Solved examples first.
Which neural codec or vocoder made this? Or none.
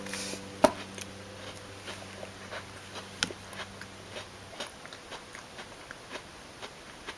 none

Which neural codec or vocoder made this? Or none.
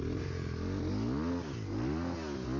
none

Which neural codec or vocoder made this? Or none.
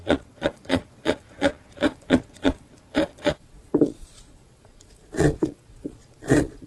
vocoder, Vocos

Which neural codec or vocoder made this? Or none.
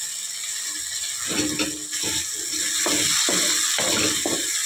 none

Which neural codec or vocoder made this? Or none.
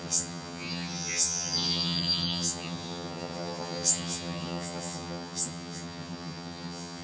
vocoder, HiFi-GAN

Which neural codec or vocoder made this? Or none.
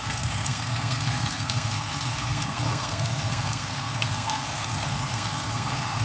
codec, SNAC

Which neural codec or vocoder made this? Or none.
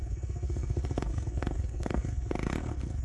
codec, SNAC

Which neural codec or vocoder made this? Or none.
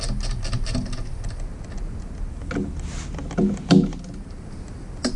none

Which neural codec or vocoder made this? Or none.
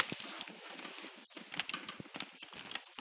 none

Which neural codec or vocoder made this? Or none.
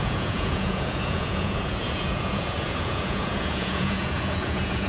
vocoder, Vocos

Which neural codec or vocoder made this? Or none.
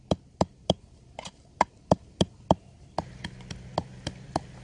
none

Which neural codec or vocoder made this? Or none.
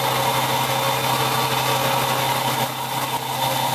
none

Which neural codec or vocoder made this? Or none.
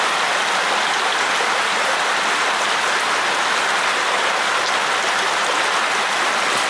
none